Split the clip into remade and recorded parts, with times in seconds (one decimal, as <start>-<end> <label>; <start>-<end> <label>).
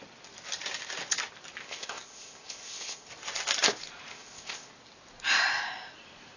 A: 0.0-1.6 recorded; 1.6-3.1 remade; 3.1-4.1 recorded; 4.1-4.7 remade; 4.7-6.4 recorded